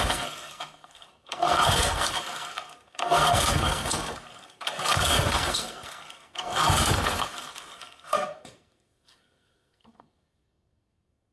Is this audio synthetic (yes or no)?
yes